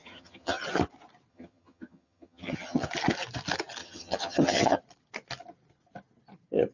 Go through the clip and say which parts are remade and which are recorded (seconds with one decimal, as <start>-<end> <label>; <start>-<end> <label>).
0.0-0.6 remade; 0.6-1.3 recorded; 1.3-2.9 remade; 2.9-3.8 recorded; 3.8-4.8 remade; 4.8-6.7 recorded